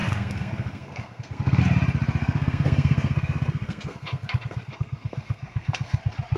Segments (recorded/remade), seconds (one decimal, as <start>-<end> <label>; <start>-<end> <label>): 0.0-1.6 remade; 1.6-2.2 recorded; 2.2-6.0 remade; 6.0-6.4 recorded